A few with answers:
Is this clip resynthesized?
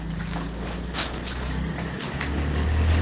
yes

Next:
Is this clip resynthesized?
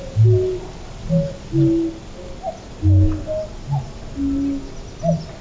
no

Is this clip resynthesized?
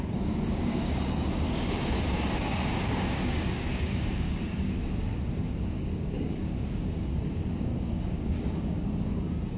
yes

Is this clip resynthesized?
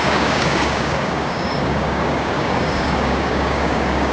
yes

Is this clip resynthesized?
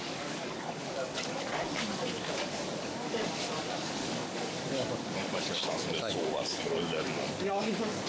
yes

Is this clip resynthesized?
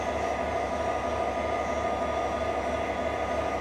no